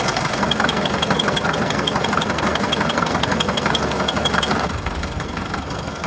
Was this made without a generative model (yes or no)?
no